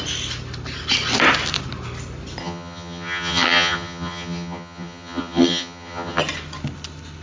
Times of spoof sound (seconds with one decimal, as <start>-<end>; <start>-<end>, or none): 2.4-6.2